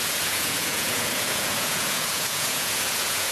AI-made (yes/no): yes